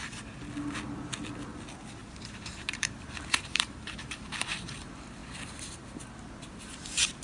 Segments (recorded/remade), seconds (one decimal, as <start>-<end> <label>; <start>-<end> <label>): 0.0-2.0 recorded; 2.0-4.8 remade; 4.8-7.2 recorded